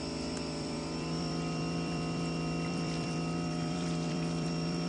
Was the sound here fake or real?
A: fake